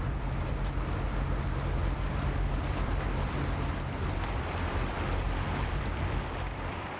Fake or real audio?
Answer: fake